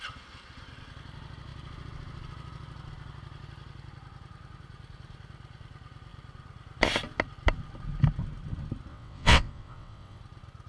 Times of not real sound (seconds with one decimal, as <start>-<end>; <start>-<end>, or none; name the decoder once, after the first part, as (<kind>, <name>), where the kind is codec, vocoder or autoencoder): 8.9-10.2 (vocoder, WaveNeXt)